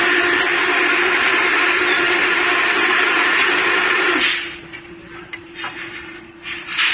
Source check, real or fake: fake